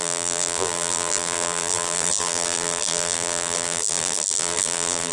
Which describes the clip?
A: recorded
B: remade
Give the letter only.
B